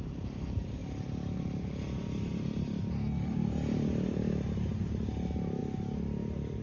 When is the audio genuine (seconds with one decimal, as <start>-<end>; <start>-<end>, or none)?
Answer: 0.0-6.6

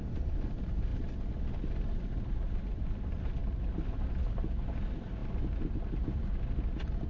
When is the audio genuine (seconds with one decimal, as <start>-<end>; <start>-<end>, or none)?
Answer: 0.0-7.1

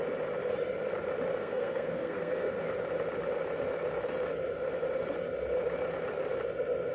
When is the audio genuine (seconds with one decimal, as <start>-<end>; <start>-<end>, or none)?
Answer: 0.0-1.4; 2.5-6.9

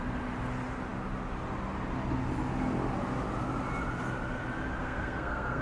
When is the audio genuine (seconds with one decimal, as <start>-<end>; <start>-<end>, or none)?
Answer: 0.0-4.8

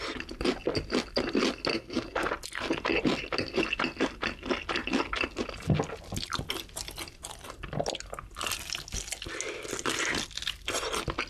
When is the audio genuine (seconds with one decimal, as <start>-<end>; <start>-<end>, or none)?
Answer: 0.0-1.7; 2.3-11.3

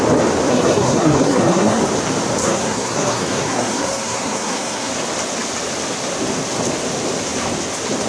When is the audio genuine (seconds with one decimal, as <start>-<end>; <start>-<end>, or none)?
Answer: 0.0-0.5; 1.8-2.4; 4.9-8.1

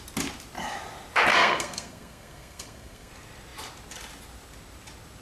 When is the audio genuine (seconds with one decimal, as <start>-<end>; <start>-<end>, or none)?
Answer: 0.0-1.3; 3.1-5.2

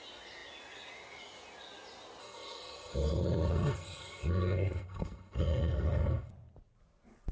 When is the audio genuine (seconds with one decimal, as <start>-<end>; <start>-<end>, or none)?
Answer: 0.0-2.2; 6.3-7.3